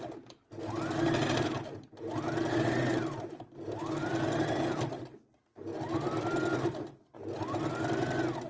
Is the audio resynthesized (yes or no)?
no